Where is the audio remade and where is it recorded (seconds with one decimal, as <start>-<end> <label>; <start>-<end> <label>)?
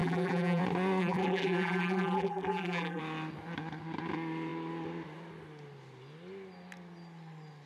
0.0-0.6 remade; 0.6-1.0 recorded; 1.0-3.0 remade; 3.0-7.7 recorded